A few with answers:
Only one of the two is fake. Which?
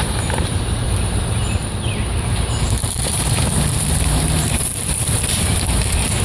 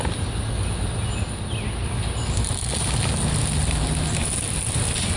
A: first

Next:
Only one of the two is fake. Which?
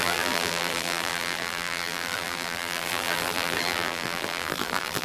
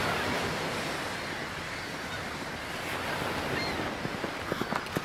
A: first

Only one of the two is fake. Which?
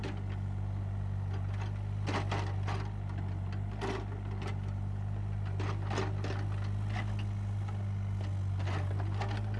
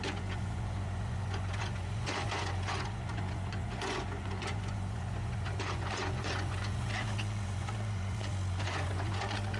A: second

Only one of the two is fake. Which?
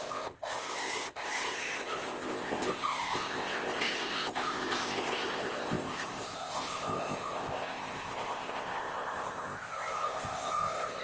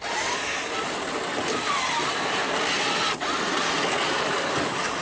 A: first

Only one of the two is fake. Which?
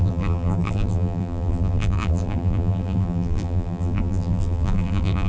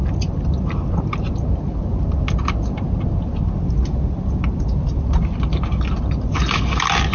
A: first